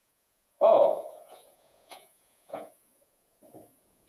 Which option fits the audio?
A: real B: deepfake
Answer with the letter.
B